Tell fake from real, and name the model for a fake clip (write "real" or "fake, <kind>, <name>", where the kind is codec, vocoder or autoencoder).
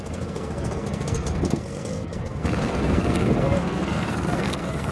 fake, codec, SNAC